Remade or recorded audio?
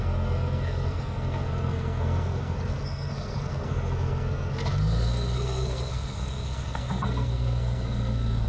remade